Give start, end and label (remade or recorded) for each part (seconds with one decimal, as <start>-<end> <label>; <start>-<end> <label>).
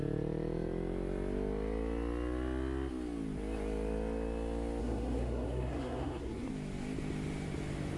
0.0-4.8 recorded; 4.8-6.5 remade; 6.5-8.0 recorded